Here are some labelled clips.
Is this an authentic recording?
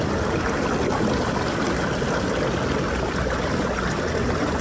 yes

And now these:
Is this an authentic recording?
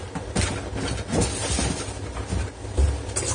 yes